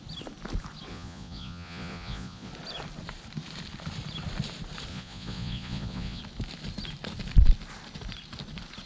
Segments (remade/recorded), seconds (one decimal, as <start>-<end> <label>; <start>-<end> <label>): 0.0-0.9 recorded; 0.9-2.5 remade; 2.5-4.9 recorded; 4.9-6.2 remade; 6.2-8.9 recorded